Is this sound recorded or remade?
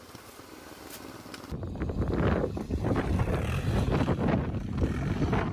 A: recorded